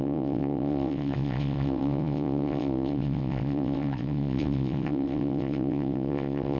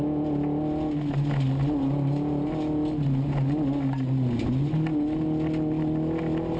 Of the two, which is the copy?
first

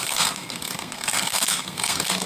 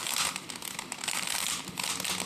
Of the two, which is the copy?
first